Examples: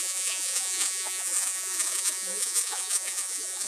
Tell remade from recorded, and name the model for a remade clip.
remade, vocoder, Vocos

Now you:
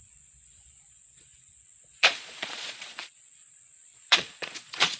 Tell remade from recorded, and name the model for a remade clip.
remade, vocoder, Vocos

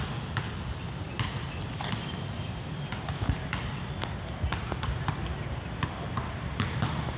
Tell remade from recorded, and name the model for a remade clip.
recorded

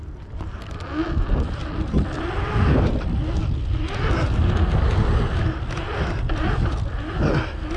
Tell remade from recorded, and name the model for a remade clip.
recorded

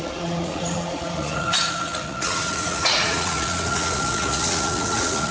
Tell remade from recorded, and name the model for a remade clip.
remade, vocoder, Vocos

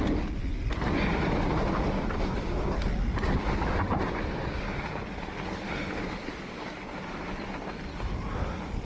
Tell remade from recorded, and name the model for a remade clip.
recorded